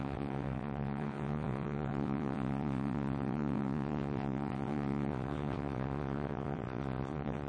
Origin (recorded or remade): remade